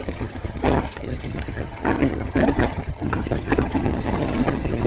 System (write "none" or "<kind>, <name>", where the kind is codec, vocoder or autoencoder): vocoder, HiFi-GAN